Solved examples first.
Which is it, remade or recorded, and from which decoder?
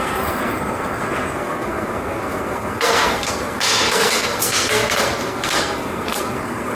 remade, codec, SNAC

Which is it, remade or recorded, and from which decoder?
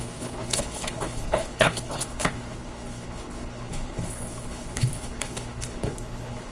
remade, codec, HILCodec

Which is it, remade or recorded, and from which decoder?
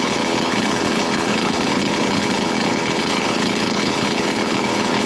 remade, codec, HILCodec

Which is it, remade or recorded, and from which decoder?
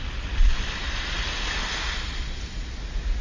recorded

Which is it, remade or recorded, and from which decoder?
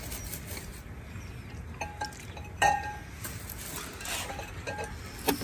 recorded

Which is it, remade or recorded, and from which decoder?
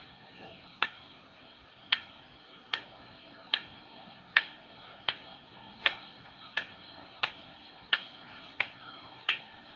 remade, codec, SNAC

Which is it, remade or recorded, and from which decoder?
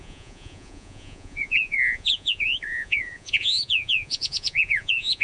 remade, vocoder, Vocos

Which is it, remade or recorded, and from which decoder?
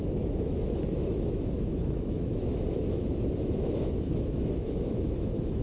remade, autoencoder, DAC-VAE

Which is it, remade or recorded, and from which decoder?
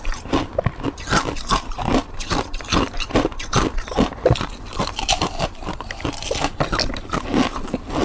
recorded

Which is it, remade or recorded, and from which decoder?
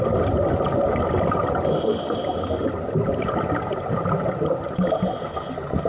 recorded